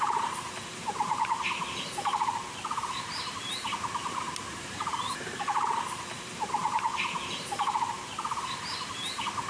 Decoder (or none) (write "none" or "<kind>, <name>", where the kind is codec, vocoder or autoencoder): vocoder, BigVGAN v2